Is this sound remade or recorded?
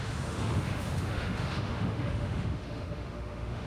remade